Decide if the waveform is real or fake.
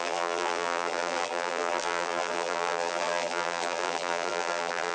fake